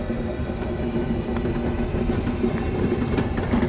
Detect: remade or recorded recorded